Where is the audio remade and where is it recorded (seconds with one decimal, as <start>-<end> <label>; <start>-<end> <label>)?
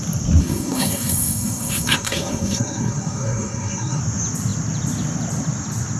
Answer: 0.0-0.4 recorded; 0.4-4.0 remade; 4.0-6.0 recorded